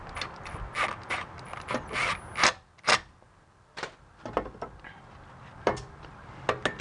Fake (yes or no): no